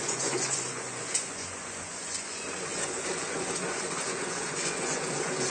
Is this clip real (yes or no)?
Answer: no